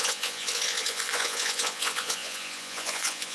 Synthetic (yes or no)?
yes